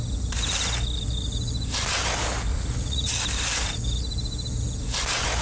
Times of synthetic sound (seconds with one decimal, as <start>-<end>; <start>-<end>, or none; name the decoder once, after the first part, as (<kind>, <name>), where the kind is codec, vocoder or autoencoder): 2.5-3.1 (vocoder, Vocos)